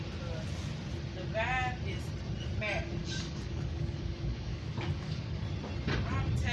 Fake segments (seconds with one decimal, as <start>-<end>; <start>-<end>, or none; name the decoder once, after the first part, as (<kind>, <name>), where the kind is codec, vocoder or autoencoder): 3.0-5.4 (codec, DAC)